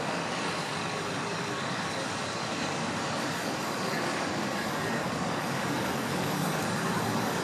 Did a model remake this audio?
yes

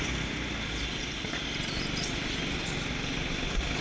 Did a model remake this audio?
no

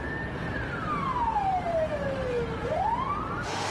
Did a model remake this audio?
no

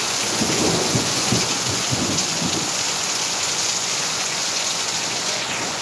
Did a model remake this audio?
yes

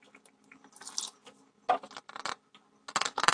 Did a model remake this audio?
no